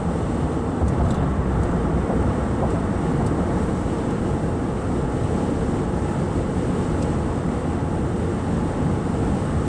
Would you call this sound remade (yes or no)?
no